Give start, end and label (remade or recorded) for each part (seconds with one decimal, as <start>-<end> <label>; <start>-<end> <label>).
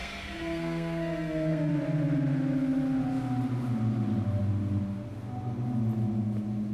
0.0-1.7 remade; 1.7-6.7 recorded